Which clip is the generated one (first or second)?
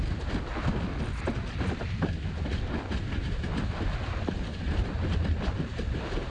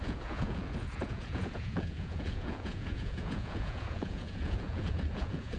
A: second